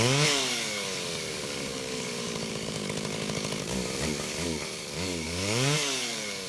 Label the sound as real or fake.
fake